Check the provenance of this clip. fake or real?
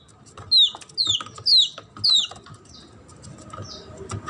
real